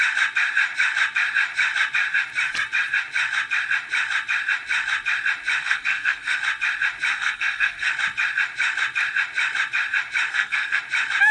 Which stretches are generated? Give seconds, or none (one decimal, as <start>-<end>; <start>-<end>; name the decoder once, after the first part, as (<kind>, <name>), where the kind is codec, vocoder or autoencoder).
5.6-6.4 (codec, SNAC); 7.1-7.9; 10.3-10.8